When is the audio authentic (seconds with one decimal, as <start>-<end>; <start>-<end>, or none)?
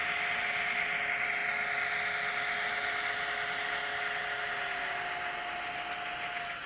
0.0-6.7